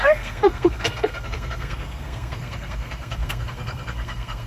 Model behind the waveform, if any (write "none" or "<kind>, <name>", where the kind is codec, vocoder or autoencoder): codec, SNAC